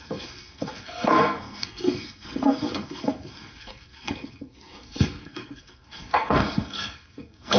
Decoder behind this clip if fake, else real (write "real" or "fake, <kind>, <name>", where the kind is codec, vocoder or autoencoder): fake, codec, SNAC